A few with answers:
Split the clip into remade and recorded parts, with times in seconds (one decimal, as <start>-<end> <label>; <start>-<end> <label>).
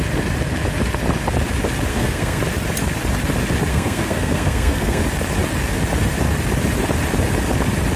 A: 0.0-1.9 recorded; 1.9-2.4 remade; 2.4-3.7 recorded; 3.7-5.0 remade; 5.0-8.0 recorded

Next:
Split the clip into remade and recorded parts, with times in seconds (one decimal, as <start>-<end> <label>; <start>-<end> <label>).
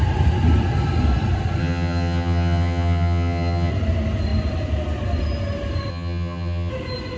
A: 0.0-1.6 recorded; 1.6-3.7 remade; 3.7-5.9 recorded; 5.9-6.7 remade; 6.7-7.2 recorded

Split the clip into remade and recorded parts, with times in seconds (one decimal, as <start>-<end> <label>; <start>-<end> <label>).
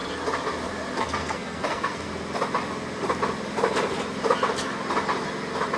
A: 0.0-1.0 recorded; 1.0-2.1 remade; 2.1-5.8 recorded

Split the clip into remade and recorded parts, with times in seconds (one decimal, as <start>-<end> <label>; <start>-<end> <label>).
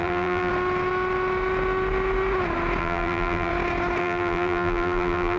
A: 0.0-0.5 remade; 0.5-2.8 recorded; 2.8-3.5 remade; 3.5-4.0 recorded; 4.0-5.4 remade